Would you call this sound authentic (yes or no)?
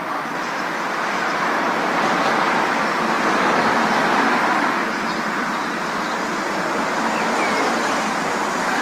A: yes